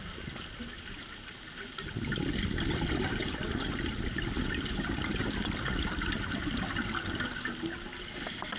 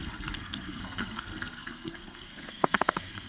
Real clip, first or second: first